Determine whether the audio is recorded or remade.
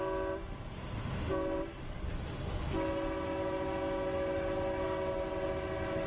recorded